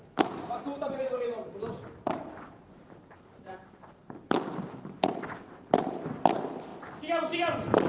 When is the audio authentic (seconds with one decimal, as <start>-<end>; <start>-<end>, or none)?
4.0-4.6; 6.7-7.9

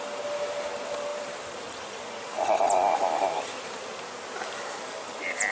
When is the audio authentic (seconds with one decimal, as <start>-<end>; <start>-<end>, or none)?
0.0-1.1; 1.6-5.5

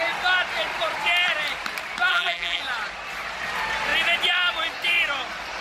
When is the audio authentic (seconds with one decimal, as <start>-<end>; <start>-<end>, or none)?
0.0-2.1; 2.6-5.6

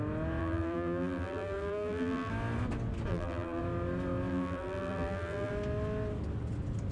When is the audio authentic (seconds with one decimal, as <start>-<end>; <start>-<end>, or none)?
0.0-0.4; 2.3-3.1; 3.6-4.3; 5.5-6.9